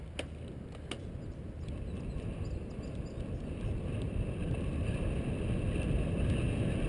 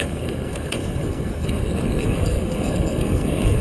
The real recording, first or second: first